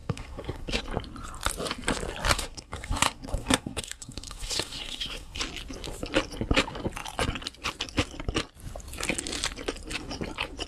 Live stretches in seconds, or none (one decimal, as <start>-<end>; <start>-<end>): 0.8-2.3; 5.4-10.7

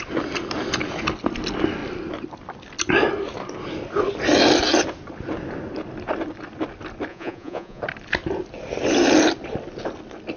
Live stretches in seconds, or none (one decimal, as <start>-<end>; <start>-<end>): 0.0-7.1; 7.8-10.4